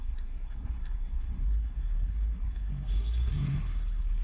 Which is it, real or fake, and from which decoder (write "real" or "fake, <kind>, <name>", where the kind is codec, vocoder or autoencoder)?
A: fake, codec, SNAC